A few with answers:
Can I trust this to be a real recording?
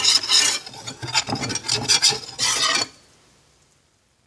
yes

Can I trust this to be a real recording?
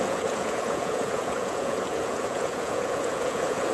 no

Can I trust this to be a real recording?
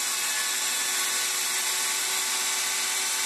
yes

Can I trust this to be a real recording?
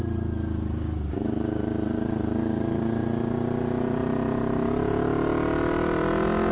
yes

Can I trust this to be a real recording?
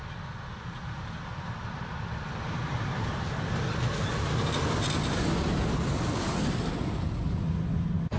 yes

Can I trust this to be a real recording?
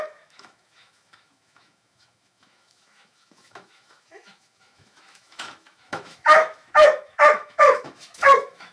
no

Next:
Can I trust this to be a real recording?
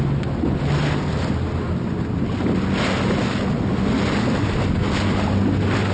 yes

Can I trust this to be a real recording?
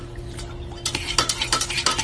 yes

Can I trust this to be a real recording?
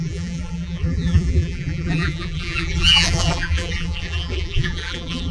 no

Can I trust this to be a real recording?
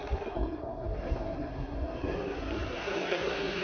no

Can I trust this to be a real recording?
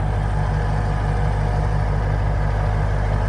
yes